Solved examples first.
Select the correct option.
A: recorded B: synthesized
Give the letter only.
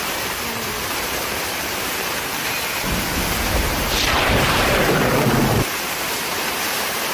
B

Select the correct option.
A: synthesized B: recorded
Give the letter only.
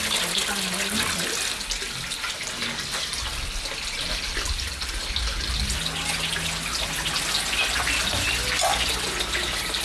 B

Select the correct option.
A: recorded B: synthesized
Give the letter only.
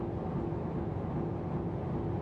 A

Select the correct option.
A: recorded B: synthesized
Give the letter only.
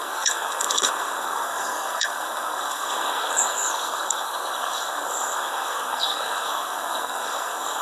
B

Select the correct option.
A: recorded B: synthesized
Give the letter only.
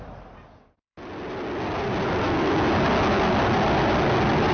A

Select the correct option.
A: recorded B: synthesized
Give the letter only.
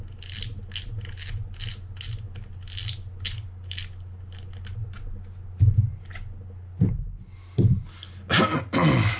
A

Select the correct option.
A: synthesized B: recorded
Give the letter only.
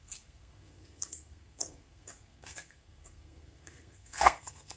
A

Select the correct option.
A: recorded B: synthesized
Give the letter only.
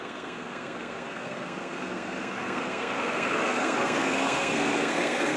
B